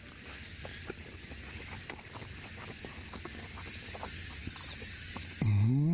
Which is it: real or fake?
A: real